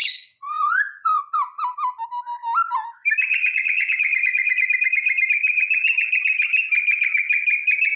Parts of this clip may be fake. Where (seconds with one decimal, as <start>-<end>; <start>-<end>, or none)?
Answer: 0.0-1.2; 3.3-4.7

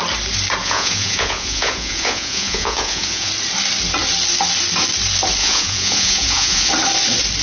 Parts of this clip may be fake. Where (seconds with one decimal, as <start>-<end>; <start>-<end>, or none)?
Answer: 0.6-3.3; 5.4-6.7

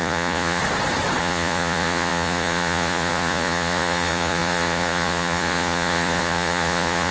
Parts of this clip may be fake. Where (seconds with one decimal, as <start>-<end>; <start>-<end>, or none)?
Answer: 0.0-0.6; 1.2-7.1

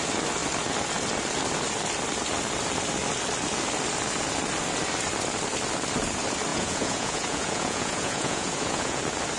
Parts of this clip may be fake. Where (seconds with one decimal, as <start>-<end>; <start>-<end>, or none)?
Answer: 6.5-9.0

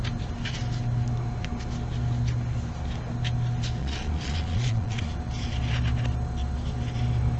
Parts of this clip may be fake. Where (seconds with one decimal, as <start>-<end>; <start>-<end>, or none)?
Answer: 3.8-5.1

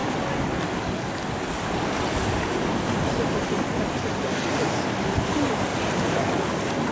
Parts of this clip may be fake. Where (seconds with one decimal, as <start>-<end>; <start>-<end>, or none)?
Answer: none

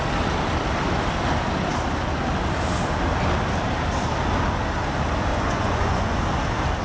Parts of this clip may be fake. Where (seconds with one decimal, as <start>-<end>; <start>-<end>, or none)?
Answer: 5.3-6.2